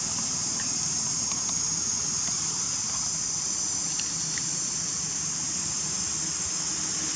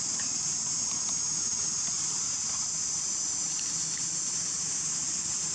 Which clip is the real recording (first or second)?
second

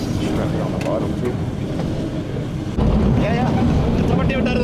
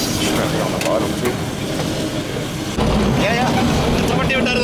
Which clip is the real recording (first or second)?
second